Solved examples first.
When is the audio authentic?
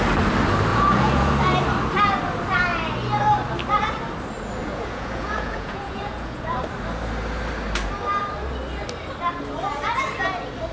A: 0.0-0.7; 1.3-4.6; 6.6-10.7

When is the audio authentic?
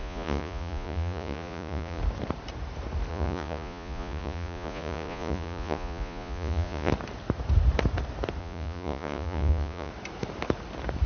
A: 2.0-3.1; 6.9-8.4; 9.9-11.1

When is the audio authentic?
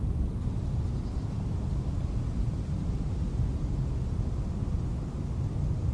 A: 0.0-5.9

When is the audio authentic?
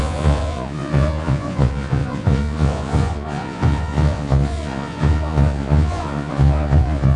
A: none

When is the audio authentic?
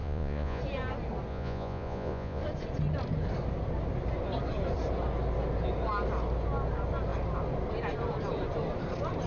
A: 0.6-1.3; 2.4-9.3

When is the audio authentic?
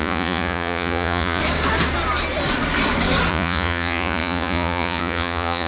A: 1.4-3.3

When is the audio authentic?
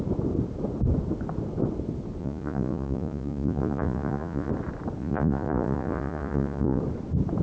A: 0.0-2.2; 4.5-5.0; 6.8-7.4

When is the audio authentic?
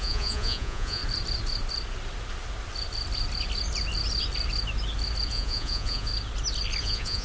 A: 1.0-5.3; 6.1-6.8